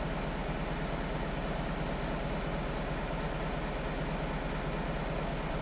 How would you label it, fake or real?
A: real